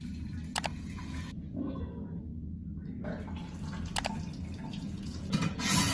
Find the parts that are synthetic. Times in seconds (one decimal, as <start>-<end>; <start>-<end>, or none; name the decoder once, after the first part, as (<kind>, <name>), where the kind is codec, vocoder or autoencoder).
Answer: 0.7-1.7 (vocoder, Vocos); 4.7-5.9